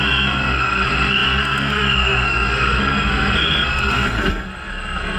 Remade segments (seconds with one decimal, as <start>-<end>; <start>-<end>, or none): 0.0-5.2

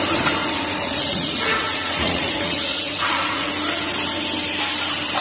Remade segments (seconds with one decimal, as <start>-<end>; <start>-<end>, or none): 0.4-3.5

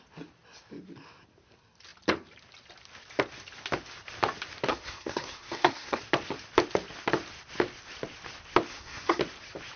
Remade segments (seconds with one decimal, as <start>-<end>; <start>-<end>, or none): 4.7-6.0; 8.7-9.2

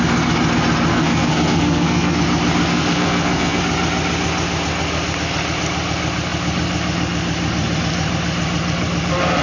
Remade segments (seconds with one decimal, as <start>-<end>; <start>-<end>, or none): 0.9-2.2; 2.7-3.6

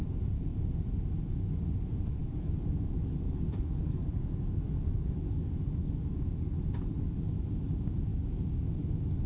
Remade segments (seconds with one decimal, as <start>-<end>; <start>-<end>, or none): 2.2-6.5; 8.1-8.7

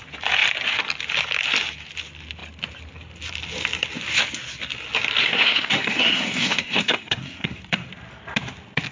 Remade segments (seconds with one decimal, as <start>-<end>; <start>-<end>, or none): 5.2-7.6